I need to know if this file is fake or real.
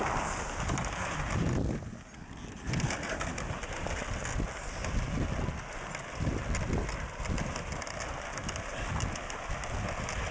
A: real